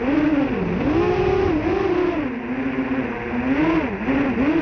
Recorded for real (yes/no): yes